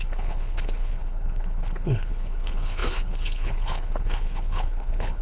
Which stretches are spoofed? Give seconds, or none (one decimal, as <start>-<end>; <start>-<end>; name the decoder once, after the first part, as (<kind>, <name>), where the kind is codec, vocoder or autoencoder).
0.0-5.2 (codec, HILCodec)